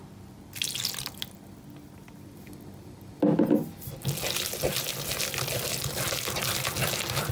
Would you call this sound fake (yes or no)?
no